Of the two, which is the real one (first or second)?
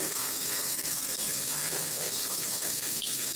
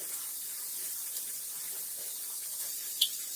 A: second